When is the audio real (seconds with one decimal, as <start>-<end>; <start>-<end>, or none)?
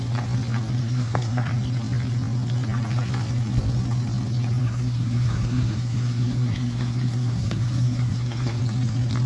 0.0-0.8; 1.5-4.6; 8.6-9.3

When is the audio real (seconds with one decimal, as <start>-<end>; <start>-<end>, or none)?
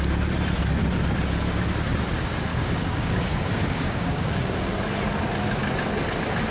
0.0-2.5; 4.6-6.5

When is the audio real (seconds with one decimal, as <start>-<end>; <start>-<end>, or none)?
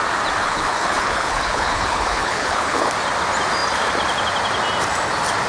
0.0-0.4; 2.9-5.5